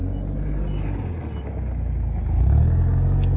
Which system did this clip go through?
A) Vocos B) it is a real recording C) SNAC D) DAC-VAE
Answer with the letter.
B